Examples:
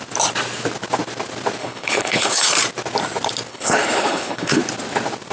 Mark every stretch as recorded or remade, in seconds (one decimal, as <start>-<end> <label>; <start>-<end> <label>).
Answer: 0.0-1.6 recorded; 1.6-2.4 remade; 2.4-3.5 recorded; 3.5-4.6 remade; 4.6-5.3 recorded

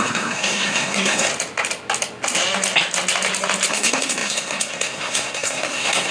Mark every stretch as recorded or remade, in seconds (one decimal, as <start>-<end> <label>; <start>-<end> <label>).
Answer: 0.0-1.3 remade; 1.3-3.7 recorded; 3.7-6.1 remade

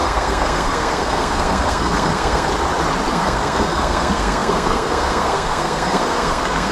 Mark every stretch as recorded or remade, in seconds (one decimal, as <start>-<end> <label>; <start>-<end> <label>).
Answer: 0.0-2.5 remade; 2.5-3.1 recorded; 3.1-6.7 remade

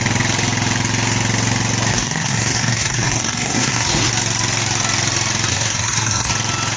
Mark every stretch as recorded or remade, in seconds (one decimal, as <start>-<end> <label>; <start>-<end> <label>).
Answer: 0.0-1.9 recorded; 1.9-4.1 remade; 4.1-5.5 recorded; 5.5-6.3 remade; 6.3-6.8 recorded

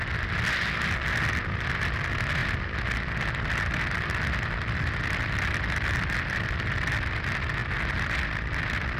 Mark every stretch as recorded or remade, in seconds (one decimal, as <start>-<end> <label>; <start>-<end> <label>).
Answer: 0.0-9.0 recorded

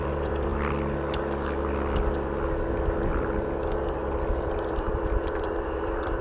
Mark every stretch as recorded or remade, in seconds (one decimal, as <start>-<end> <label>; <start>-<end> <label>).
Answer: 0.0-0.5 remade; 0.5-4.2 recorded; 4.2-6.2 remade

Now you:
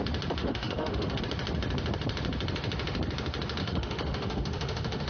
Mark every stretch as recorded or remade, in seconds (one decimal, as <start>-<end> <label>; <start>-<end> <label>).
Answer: 0.0-0.4 recorded; 0.4-1.2 remade; 1.2-3.6 recorded; 3.6-5.1 remade